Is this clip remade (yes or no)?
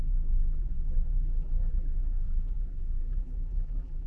yes